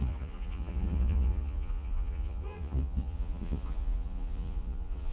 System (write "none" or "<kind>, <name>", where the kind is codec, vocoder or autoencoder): vocoder, Vocos